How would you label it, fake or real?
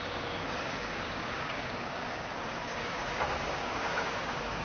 fake